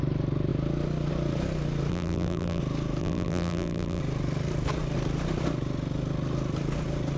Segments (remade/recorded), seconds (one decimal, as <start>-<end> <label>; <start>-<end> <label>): 0.0-1.9 recorded; 1.9-2.6 remade; 2.6-3.0 recorded; 3.0-4.0 remade; 4.0-7.2 recorded